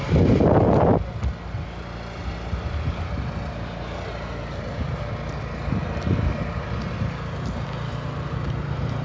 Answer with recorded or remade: recorded